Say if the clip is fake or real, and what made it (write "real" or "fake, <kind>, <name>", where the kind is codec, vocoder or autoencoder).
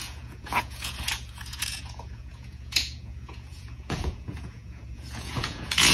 fake, vocoder, Vocos